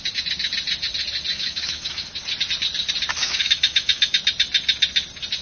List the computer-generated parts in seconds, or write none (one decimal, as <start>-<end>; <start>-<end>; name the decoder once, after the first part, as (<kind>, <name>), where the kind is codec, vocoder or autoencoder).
1.3-2.1 (autoencoder, DAC-VAE); 3.2-4.1